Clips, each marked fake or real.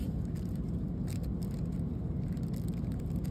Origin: real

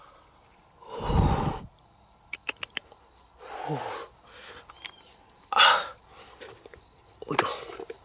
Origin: real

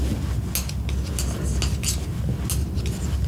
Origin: real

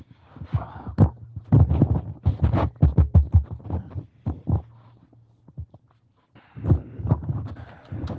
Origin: real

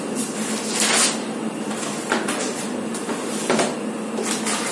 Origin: real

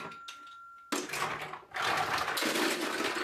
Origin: real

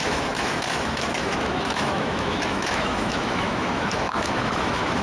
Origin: fake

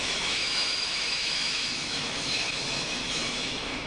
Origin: fake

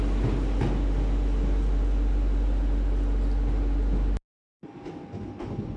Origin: real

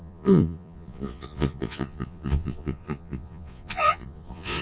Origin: fake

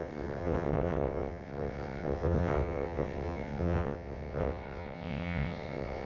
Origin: fake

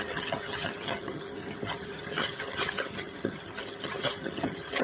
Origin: fake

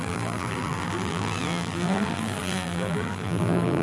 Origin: fake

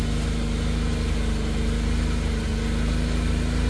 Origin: real